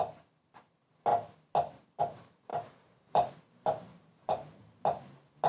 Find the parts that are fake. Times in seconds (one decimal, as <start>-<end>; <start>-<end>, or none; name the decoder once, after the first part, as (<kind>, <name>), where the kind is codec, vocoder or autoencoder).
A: 2.5-3.3 (vocoder, BigVGAN v2); 3.9-4.5